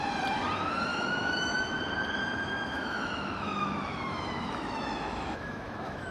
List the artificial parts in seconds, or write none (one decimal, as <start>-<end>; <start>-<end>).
0.9-1.8; 2.2-6.1